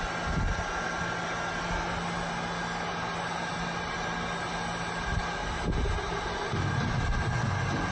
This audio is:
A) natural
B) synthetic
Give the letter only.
A